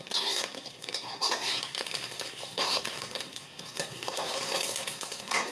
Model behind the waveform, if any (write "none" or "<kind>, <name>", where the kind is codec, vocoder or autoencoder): codec, SNAC